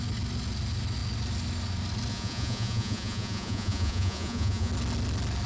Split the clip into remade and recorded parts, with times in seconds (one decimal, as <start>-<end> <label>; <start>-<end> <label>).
0.0-2.1 recorded; 2.1-4.7 remade; 4.7-5.5 recorded